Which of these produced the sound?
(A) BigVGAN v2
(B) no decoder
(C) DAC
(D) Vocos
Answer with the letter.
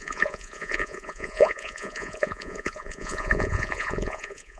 D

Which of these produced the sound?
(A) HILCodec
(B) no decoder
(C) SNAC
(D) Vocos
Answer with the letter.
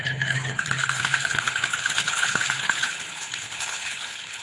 A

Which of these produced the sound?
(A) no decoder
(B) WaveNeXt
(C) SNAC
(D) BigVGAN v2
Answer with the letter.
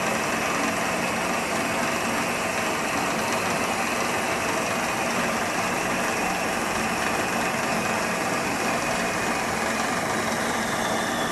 A